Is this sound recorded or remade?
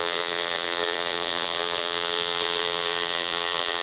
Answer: remade